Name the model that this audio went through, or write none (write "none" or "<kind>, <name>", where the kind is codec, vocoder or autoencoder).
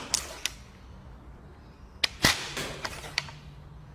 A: none